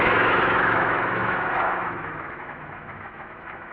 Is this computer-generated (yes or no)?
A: yes